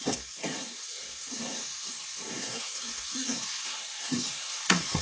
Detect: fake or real fake